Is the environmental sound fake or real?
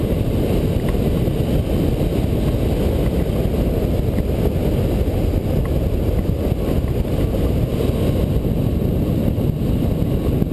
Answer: real